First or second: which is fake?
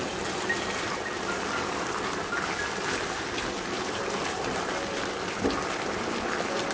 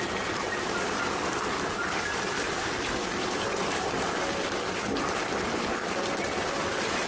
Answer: second